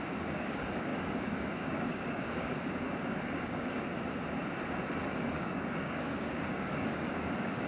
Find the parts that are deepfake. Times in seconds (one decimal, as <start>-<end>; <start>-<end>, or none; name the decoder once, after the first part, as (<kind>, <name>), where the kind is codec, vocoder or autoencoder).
0.0-3.9 (codec, DAC); 5.2-7.7